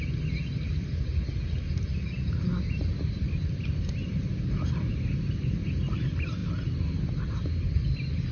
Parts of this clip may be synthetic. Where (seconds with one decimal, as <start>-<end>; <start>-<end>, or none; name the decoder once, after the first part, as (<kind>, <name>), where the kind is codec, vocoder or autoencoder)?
none